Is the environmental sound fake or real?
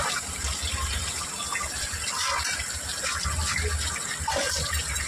real